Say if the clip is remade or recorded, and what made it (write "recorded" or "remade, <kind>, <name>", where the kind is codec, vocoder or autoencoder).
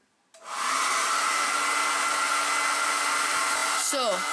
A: recorded